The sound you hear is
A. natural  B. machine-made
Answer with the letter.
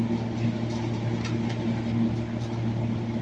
A